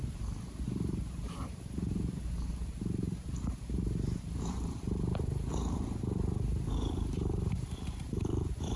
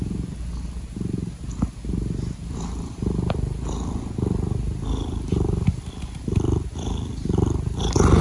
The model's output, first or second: first